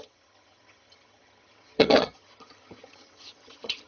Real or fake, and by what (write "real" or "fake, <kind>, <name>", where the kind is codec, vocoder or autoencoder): fake, vocoder, HiFi-GAN